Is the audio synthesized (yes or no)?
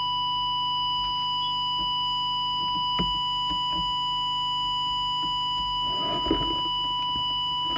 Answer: no